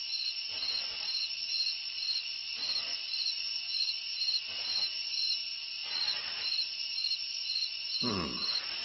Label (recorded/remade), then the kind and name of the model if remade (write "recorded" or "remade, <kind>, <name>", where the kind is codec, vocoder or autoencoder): remade, vocoder, BigVGAN v2